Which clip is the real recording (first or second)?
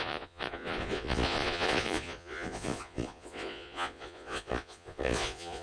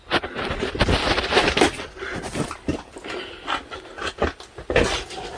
second